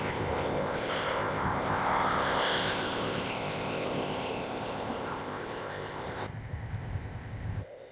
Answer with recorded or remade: remade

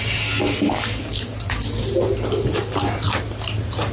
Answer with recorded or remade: recorded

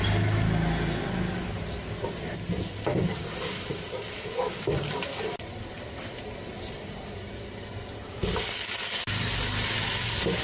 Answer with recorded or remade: recorded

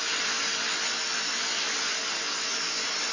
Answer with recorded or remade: recorded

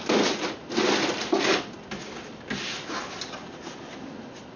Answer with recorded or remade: recorded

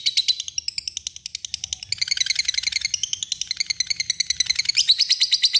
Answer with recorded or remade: recorded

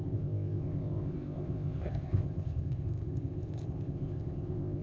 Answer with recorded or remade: remade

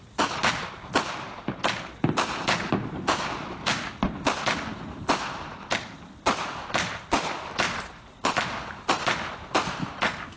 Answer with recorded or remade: recorded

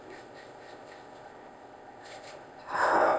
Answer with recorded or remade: remade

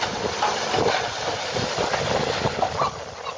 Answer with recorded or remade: recorded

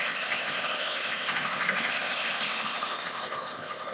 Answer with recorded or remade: remade